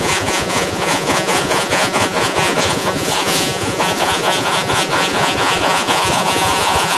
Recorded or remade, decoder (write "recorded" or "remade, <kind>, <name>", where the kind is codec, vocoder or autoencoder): remade, vocoder, Vocos